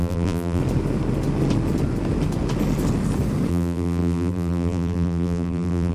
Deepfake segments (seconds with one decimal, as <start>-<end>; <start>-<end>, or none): 0.0-0.6; 3.5-5.9